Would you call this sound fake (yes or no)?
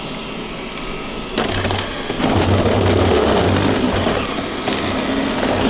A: no